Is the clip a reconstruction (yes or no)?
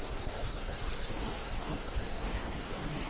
yes